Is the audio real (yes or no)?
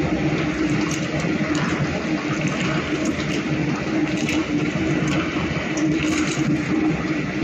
yes